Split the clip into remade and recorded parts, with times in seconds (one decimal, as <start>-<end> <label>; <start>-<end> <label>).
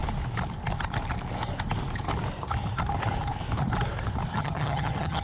0.0-4.3 recorded; 4.3-5.2 remade